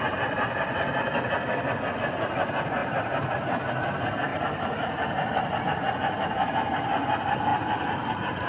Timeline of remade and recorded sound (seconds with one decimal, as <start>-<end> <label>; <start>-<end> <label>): 0.0-2.8 recorded; 2.8-3.7 remade; 3.7-4.3 recorded; 4.3-5.6 remade; 5.6-8.5 recorded